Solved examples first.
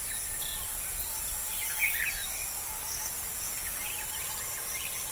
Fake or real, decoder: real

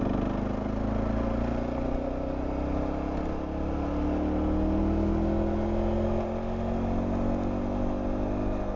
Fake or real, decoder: real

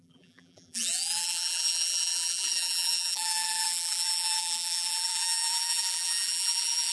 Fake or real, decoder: fake, vocoder, BigVGAN v2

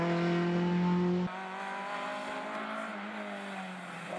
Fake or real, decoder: real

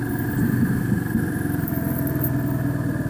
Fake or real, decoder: real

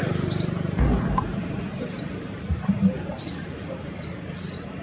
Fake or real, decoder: fake, vocoder, BigVGAN v2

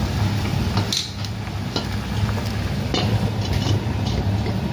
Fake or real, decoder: real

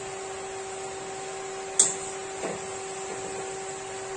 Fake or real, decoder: real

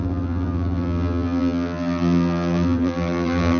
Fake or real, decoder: fake, vocoder, BigVGAN v2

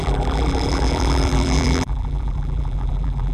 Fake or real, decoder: fake, vocoder, BigVGAN v2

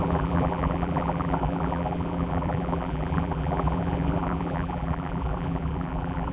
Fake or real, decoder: fake, vocoder, BigVGAN v2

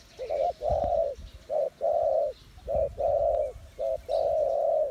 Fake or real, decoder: real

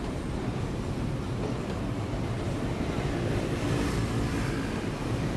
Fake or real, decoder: fake, vocoder, BigVGAN v2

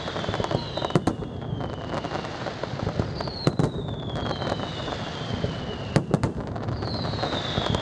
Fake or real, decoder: real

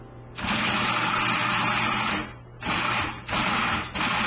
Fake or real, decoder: real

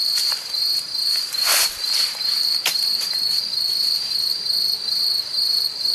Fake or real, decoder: fake, vocoder, BigVGAN v2